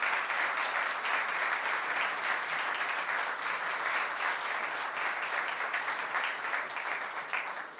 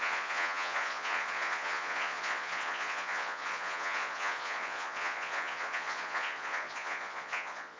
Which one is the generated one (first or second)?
second